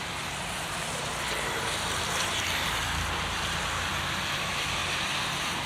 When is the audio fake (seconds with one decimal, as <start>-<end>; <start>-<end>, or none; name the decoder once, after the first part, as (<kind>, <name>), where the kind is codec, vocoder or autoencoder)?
0.0-4.8 (vocoder, BigVGAN v2)